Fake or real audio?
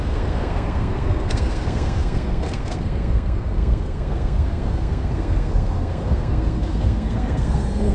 fake